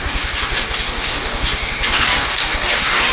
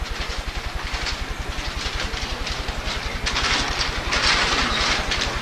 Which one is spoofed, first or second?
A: first